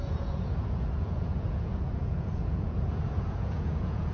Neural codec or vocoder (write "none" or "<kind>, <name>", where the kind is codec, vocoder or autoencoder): vocoder, Vocos